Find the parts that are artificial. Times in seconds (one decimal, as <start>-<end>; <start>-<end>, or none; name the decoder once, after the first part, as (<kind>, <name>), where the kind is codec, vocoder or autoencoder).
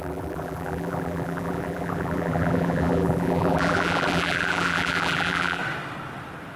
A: 0.0-5.6 (vocoder, BigVGAN v2)